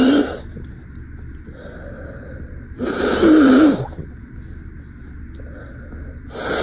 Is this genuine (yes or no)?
yes